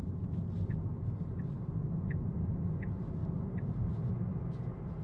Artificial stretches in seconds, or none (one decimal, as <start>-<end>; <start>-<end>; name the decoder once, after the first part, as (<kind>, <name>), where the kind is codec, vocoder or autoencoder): 3.2-4.1 (vocoder, BigVGAN v2)